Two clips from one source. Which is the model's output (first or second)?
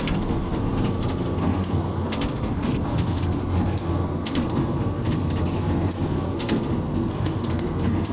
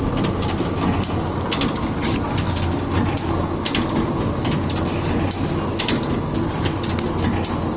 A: first